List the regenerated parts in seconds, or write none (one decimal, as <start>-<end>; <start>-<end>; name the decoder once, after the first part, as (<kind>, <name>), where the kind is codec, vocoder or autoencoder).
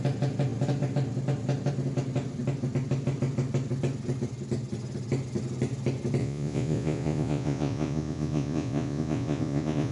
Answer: 6.2-9.9 (vocoder, Vocos)